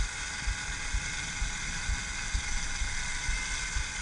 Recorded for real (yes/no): yes